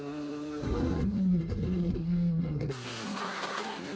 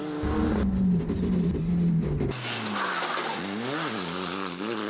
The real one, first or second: second